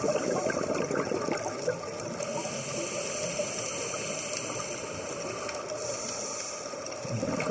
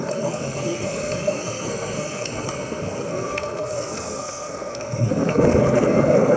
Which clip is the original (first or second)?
first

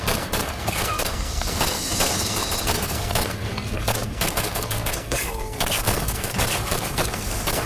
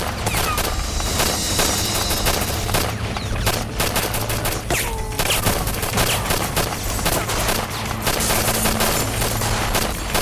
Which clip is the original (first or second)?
second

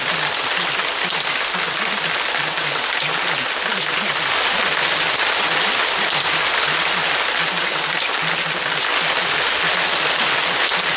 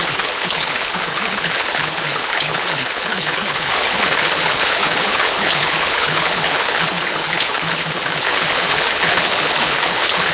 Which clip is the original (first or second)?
first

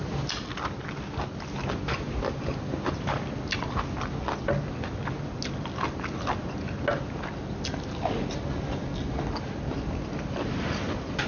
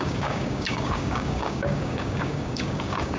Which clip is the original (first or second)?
first